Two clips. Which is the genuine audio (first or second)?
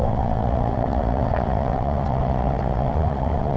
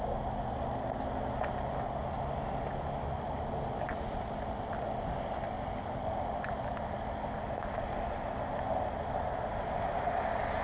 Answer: second